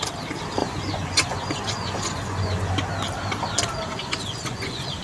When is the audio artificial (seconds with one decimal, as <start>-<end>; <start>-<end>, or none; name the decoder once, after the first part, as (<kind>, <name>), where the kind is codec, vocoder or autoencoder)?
0.6-2.9 (vocoder, Vocos); 3.9-5.0